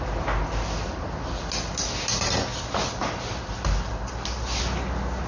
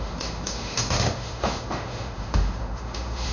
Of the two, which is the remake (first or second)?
second